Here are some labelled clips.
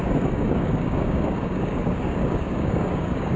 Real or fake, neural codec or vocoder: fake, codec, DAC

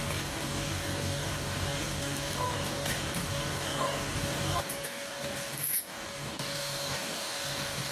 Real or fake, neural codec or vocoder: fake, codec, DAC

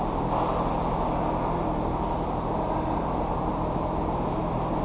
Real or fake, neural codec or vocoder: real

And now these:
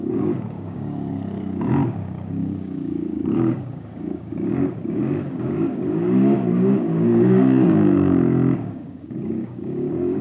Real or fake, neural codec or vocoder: fake, codec, DAC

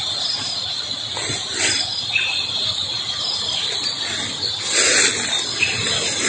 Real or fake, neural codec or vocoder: real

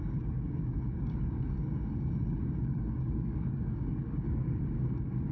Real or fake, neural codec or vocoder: fake, codec, DAC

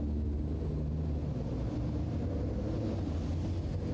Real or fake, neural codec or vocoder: real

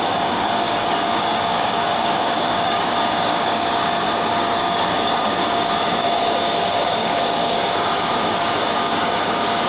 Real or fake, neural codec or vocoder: fake, codec, DAC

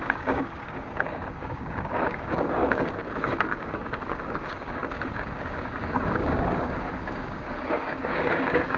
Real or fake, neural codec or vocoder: fake, codec, DAC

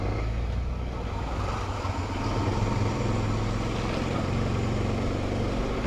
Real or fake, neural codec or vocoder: real